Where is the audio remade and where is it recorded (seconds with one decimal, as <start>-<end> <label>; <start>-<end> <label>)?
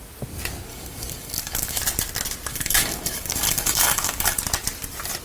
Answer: 0.0-0.7 recorded; 0.7-1.8 remade; 1.8-2.5 recorded; 2.5-4.4 remade; 4.4-5.2 recorded